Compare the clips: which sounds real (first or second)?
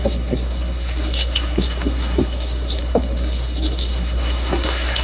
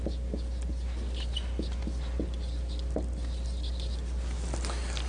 second